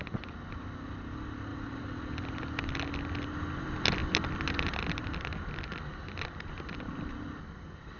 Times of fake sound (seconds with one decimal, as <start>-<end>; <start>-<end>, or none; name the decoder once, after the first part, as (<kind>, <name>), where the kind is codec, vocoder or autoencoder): none